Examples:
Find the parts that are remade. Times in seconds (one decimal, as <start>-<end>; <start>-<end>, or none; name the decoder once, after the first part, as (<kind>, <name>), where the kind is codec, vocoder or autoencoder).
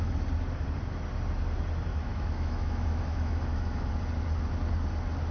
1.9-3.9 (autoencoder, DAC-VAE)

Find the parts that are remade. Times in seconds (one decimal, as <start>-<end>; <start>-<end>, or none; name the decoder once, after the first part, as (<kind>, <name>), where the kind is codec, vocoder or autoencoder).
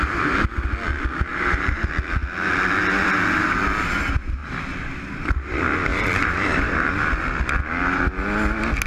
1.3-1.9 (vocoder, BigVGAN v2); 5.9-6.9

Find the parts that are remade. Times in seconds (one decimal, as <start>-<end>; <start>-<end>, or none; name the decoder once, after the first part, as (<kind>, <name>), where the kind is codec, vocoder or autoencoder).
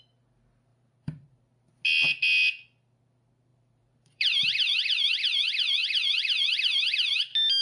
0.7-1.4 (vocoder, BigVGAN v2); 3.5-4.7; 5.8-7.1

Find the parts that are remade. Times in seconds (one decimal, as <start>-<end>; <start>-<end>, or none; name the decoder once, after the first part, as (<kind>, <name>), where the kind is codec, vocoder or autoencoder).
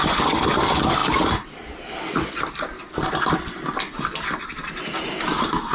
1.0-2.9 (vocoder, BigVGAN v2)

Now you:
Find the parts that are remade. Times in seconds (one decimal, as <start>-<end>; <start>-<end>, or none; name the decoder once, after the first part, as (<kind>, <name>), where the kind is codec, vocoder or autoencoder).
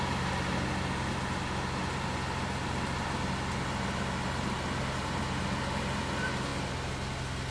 none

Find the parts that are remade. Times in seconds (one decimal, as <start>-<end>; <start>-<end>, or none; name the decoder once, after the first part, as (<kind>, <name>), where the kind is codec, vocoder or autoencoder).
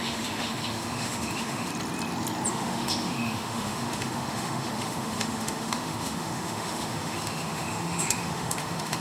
0.0-1.7 (autoencoder, DAC-VAE); 2.5-9.0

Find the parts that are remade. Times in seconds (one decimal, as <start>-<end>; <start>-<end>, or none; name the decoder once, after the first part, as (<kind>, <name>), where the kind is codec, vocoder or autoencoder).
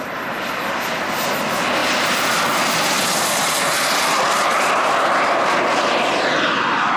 none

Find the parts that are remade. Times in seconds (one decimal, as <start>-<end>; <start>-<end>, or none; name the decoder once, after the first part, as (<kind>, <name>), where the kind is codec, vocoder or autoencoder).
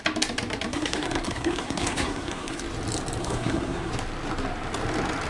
0.7-2.6 (codec, SNAC); 3.2-3.9